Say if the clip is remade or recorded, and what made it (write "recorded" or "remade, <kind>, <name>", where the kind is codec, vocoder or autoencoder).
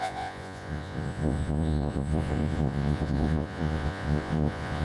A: remade, vocoder, Vocos